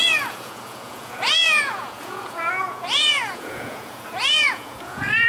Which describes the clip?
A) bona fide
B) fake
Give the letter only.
B